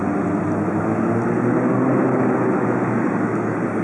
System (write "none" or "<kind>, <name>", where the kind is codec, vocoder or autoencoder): none